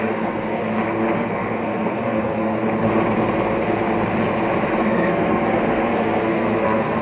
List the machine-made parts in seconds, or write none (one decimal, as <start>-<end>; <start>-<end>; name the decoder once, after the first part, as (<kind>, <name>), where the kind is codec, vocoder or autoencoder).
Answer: 0.0-0.6 (codec, SNAC); 1.2-2.6; 4.8-7.0